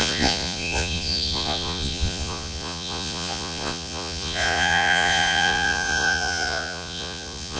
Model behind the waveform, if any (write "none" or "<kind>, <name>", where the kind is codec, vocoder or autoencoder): vocoder, Vocos